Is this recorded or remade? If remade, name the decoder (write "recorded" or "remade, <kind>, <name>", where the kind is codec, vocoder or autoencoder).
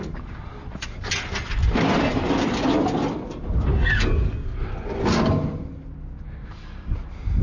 recorded